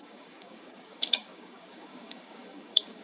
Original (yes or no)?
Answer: no